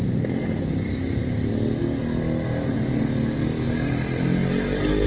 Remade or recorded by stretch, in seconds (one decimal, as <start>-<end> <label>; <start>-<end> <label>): 0.0-5.1 recorded